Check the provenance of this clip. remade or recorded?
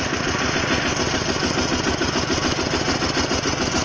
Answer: recorded